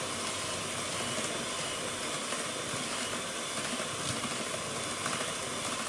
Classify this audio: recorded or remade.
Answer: remade